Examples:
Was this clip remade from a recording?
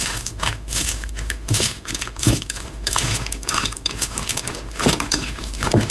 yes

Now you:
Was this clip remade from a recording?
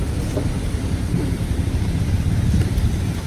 no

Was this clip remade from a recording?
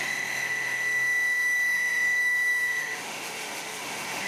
yes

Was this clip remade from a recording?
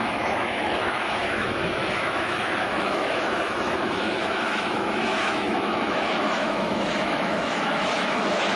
yes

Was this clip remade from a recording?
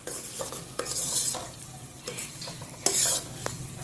no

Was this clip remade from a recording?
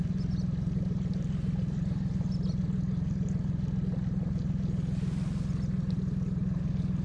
no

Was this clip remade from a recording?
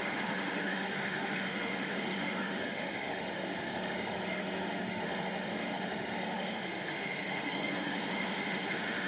yes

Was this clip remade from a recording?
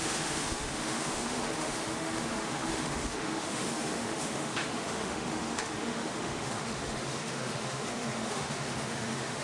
yes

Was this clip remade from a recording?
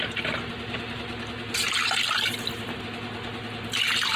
no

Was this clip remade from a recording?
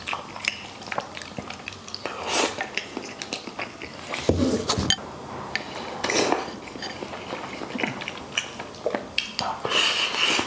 no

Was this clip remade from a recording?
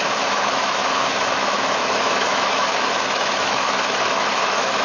yes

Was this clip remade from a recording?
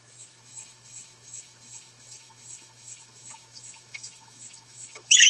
yes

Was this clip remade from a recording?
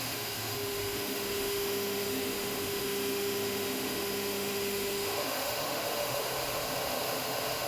yes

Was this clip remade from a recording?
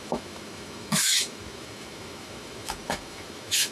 yes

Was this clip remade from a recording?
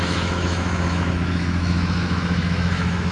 yes